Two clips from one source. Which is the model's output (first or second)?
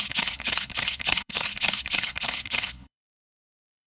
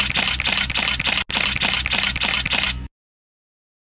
first